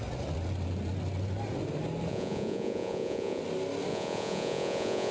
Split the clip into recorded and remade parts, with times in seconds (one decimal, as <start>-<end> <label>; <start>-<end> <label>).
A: 0.0-2.1 recorded; 2.1-3.4 remade; 3.4-3.9 recorded; 3.9-5.1 remade